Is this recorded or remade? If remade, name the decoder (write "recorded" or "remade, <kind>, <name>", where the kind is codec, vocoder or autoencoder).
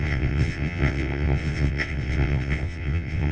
remade, vocoder, WaveNeXt